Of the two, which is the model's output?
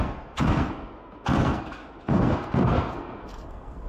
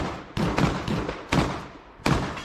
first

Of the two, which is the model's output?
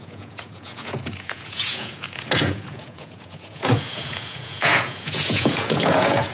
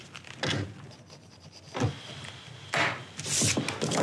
first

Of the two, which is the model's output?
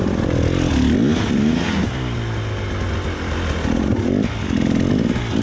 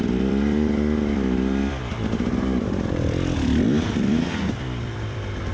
second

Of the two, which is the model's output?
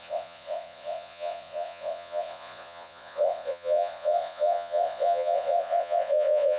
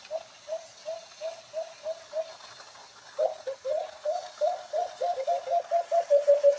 first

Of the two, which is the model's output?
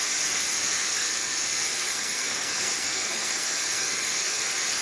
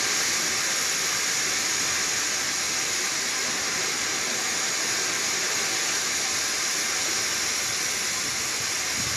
first